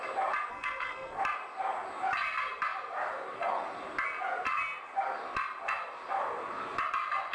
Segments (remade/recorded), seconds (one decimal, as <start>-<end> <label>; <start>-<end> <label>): 0.0-0.5 recorded; 0.5-1.2 remade; 1.2-7.3 recorded